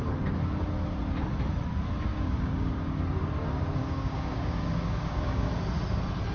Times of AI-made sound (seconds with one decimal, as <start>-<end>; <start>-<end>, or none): 2.1-2.7; 3.8-5.5